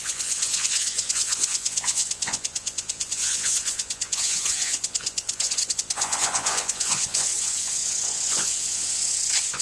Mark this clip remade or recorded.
remade